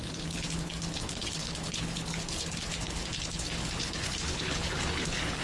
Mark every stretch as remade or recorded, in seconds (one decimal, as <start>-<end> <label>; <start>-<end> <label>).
0.0-5.4 remade